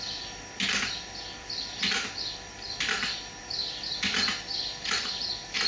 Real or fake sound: real